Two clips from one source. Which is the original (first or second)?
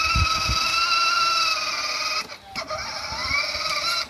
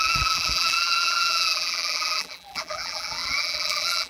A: first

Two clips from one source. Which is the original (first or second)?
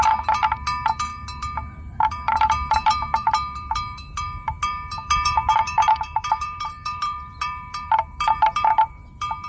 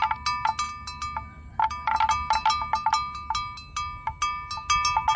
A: second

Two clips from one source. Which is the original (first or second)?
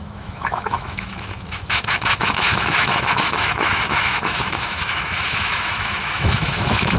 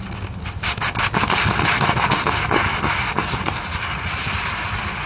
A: second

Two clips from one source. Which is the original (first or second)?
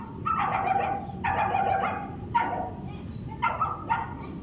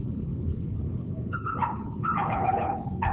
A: first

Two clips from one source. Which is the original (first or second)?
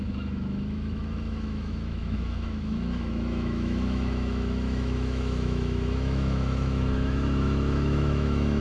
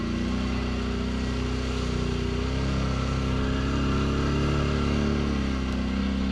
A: second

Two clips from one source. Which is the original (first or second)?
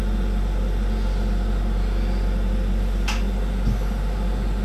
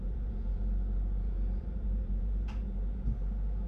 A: first